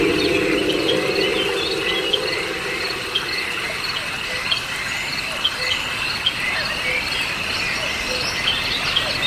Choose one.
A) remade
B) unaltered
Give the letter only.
B